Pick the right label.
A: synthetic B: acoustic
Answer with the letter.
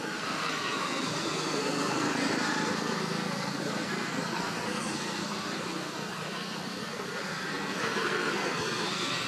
A